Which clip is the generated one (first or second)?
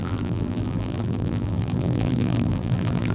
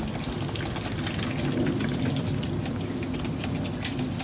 first